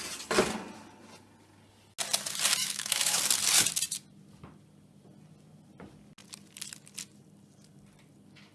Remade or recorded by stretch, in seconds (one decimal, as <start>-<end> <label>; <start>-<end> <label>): 0.0-2.6 recorded; 2.6-3.2 remade; 3.2-8.5 recorded